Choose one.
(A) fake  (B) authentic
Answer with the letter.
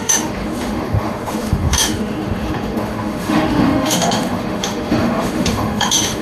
A